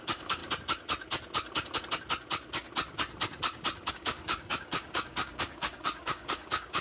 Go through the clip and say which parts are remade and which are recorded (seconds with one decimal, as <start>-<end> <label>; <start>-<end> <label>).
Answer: 0.0-0.4 remade; 0.4-3.9 recorded; 3.9-6.8 remade